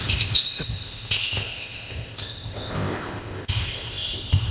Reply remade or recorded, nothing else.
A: remade